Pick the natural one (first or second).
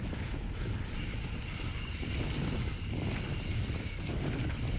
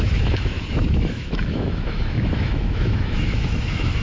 first